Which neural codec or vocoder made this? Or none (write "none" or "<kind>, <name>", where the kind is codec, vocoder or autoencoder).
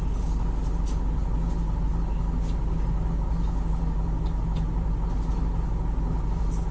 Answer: none